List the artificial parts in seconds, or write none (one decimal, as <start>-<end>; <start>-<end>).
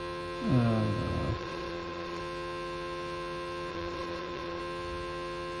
1.3-2.2; 3.7-4.6